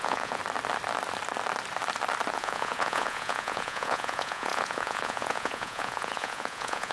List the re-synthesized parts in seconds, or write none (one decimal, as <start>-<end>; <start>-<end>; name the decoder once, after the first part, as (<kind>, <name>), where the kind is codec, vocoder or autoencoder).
0.0-0.4 (vocoder, Vocos); 2.3-6.9